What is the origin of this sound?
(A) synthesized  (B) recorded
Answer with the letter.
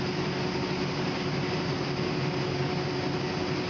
B